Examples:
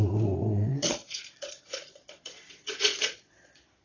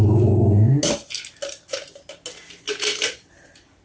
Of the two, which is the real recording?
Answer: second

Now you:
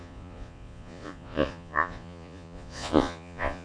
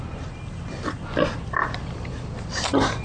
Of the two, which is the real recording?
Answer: second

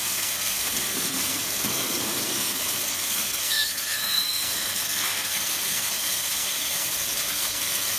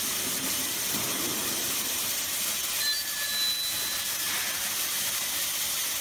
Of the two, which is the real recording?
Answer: second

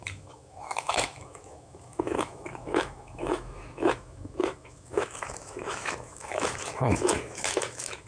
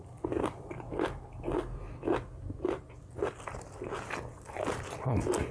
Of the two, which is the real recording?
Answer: second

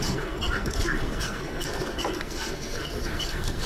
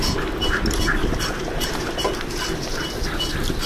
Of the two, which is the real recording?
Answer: second